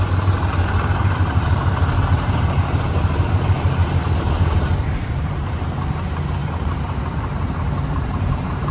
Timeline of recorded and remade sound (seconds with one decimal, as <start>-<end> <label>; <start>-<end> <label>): 0.0-8.7 remade